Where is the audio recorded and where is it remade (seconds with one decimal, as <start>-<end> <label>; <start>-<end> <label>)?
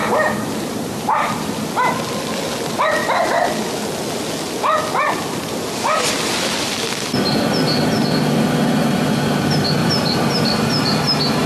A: 0.0-1.5 remade; 1.5-9.8 recorded; 9.8-11.0 remade; 11.0-11.5 recorded